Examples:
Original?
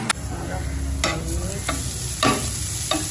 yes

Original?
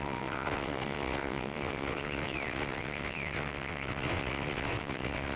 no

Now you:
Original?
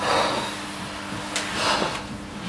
yes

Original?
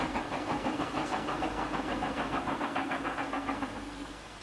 no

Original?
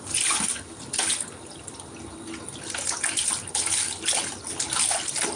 yes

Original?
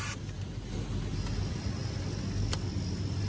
yes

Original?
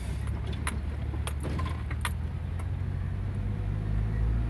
yes